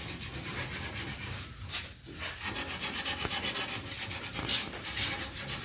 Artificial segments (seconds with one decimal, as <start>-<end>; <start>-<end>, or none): none